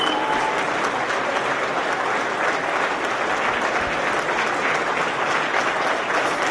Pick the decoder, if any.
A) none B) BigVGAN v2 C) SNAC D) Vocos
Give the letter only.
A